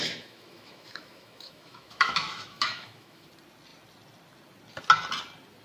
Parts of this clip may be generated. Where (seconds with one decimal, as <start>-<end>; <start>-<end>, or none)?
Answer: 0.0-3.3

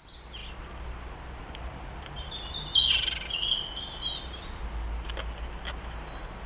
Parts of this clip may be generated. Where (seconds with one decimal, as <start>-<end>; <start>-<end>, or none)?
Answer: none

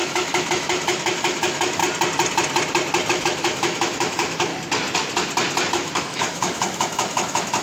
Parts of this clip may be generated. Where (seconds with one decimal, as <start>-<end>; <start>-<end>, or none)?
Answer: 0.0-1.8; 3.1-4.5; 5.7-7.6

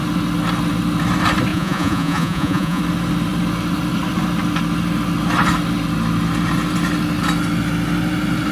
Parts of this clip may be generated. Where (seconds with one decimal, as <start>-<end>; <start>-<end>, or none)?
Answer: 1.5-2.8

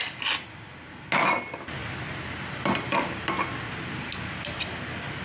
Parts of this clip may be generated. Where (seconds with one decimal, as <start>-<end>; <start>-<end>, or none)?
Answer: none

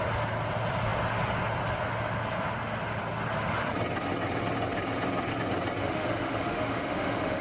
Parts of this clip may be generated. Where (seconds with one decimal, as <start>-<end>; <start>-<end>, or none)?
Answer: 5.8-7.4

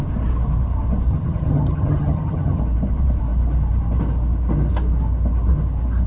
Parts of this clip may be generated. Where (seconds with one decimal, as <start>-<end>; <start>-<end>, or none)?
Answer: 1.1-2.6